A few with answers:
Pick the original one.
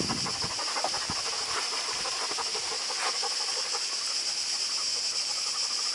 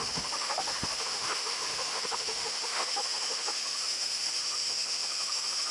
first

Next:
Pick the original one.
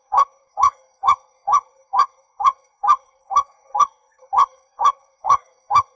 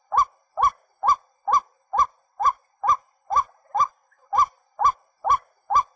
second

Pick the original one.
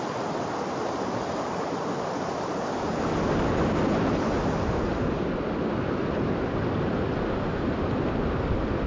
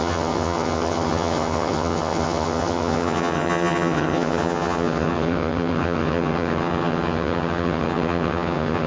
first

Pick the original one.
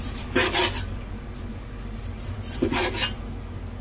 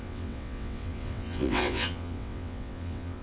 first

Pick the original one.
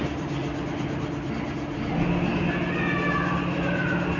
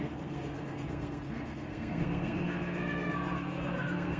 first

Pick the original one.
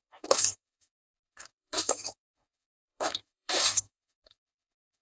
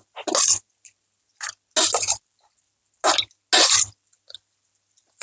second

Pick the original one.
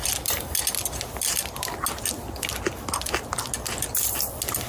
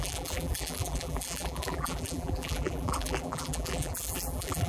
first